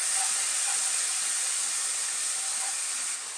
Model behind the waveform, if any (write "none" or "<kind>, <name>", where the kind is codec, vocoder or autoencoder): none